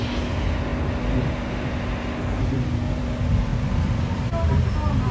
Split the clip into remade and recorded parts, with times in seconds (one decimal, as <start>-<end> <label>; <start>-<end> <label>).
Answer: 0.0-5.1 recorded